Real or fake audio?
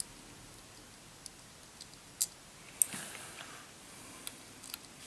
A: real